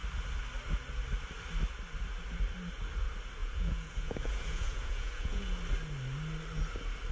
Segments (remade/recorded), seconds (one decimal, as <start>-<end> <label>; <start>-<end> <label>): 0.0-3.4 recorded; 3.4-5.6 remade; 5.6-7.1 recorded